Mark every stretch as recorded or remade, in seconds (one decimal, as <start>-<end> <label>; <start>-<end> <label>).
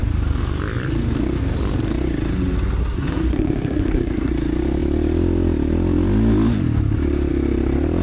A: 0.0-2.8 recorded; 2.8-4.3 remade; 4.3-8.0 recorded